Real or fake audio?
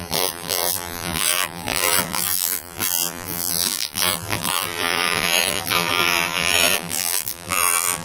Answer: fake